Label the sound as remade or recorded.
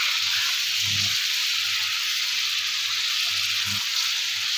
recorded